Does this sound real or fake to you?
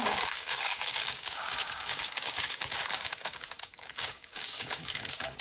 fake